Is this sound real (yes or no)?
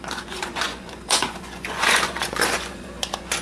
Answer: no